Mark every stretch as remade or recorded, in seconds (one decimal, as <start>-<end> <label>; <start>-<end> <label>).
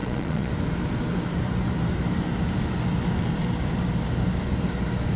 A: 0.0-0.5 remade; 0.5-5.2 recorded